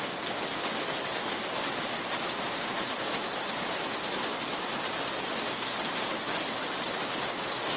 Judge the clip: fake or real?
real